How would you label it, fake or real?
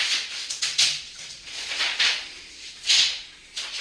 fake